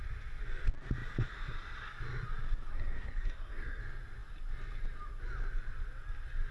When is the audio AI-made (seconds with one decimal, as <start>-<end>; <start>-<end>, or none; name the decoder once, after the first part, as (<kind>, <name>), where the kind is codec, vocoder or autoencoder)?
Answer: 2.7-3.8 (codec, SNAC)